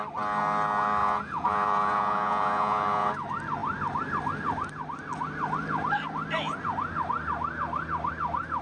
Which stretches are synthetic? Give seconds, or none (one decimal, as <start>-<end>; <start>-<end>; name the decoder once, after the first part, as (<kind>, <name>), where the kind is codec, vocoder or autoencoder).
1.0-3.1 (vocoder, Vocos)